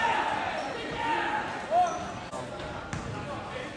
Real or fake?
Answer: real